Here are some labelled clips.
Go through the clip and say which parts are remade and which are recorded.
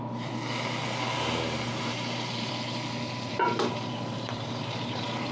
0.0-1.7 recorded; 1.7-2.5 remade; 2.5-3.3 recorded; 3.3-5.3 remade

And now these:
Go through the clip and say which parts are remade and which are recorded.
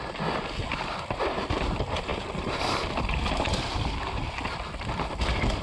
0.0-0.7 recorded; 0.7-1.2 remade; 1.2-5.6 recorded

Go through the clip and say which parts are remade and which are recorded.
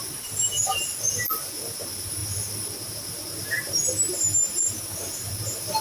0.0-5.8 remade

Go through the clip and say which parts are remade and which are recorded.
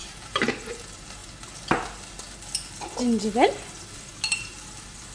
0.0-0.5 remade; 0.5-5.1 recorded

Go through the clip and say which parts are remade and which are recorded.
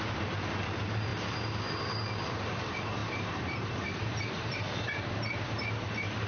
0.0-1.1 remade; 1.1-2.3 recorded; 2.3-6.3 remade